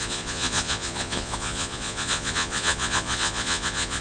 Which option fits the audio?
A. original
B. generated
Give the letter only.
B